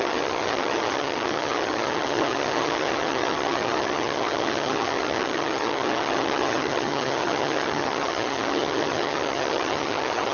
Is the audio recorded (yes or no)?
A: no